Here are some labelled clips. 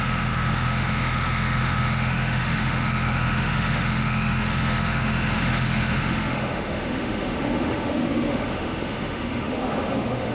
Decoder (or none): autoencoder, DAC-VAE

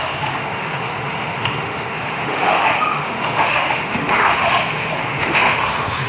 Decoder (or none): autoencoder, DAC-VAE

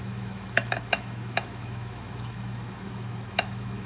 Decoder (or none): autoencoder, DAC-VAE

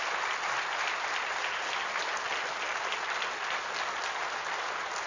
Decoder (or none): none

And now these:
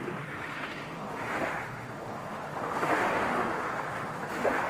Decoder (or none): autoencoder, DAC-VAE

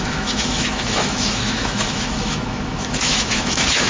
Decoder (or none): autoencoder, DAC-VAE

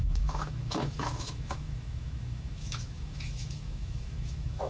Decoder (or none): autoencoder, DAC-VAE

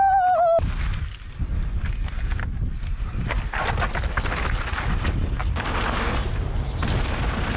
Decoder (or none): none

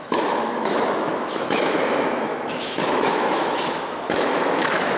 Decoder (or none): autoencoder, DAC-VAE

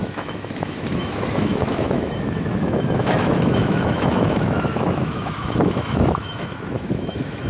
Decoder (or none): autoencoder, DAC-VAE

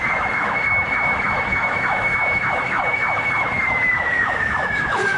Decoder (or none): autoencoder, DAC-VAE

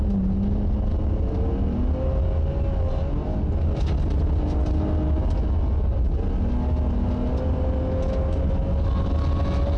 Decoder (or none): none